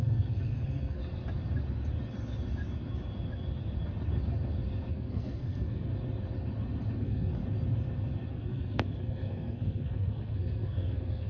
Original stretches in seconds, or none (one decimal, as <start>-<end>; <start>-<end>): 1.0-4.9; 5.9-7.0; 7.4-8.3

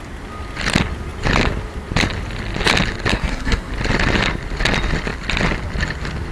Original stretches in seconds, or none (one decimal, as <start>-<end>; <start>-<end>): 0.0-3.1; 3.7-6.3

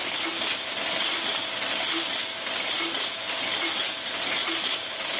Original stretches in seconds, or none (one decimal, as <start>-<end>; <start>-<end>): 0.0-4.4